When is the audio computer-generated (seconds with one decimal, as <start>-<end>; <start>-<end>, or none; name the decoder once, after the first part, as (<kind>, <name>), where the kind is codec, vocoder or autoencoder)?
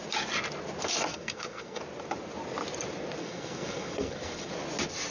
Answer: 1.1-1.8 (codec, SNAC); 3.2-4.5